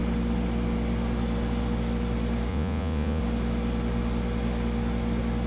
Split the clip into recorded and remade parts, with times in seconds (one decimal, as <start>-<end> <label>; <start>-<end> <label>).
0.0-2.5 recorded; 2.5-3.2 remade; 3.2-5.5 recorded